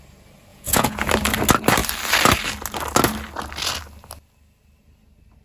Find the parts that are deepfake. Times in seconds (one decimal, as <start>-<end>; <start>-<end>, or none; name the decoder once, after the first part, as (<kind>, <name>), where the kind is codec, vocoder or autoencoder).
0.5-1.1 (vocoder, Vocos)